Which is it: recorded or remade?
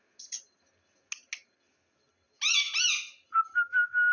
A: recorded